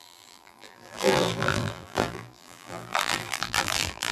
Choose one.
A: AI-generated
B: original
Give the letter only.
A